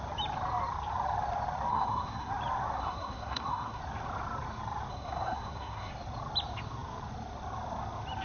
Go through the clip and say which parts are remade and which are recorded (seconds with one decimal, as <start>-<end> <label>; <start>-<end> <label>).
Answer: 0.0-1.7 recorded; 1.7-2.3 remade; 2.3-2.8 recorded; 2.8-3.8 remade; 3.8-4.9 recorded; 4.9-5.9 remade; 5.9-8.2 recorded